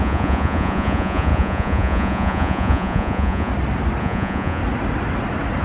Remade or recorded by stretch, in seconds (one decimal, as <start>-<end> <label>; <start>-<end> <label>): 0.0-3.5 remade; 3.5-4.0 recorded; 4.0-4.6 remade; 4.6-5.6 recorded